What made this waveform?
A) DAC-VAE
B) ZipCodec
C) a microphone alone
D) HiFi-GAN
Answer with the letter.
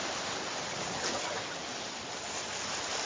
C